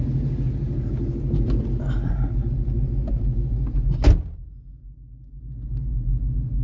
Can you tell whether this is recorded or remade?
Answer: recorded